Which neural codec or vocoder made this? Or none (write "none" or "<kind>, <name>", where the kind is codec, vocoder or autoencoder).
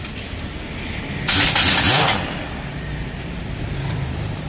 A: none